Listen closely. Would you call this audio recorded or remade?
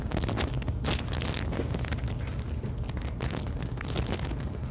recorded